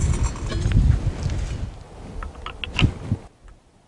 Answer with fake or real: real